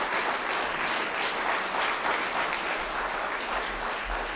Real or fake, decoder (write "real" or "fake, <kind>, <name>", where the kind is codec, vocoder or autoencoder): real